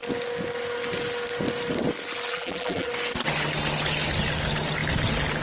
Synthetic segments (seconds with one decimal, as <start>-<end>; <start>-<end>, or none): 2.3-2.9